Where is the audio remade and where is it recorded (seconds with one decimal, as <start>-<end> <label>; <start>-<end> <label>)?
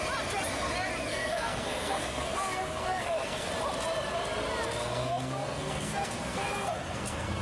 0.0-1.1 recorded; 1.1-3.5 remade; 3.5-4.8 recorded; 4.8-7.4 remade